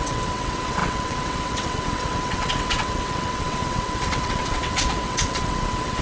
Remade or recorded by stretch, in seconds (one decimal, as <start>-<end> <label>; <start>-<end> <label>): 0.0-6.0 remade